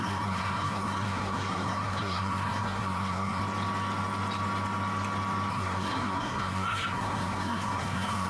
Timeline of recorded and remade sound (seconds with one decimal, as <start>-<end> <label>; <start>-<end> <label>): 0.0-3.4 remade; 3.4-5.5 recorded; 5.5-8.3 remade